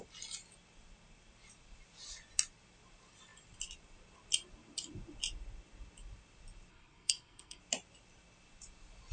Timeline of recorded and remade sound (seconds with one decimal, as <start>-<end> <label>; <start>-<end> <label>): 0.0-6.7 recorded; 6.7-7.6 remade; 7.6-9.1 recorded